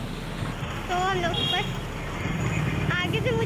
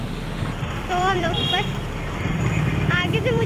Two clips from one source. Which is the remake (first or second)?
second